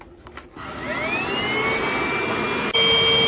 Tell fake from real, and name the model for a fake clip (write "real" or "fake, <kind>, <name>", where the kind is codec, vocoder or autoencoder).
real